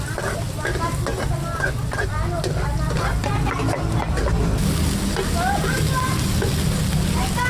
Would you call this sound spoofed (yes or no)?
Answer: no